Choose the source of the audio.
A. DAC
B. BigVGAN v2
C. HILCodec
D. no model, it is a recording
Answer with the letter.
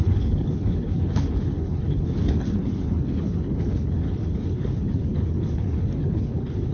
C